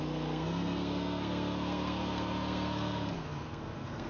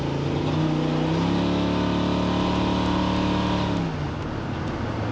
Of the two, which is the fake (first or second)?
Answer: first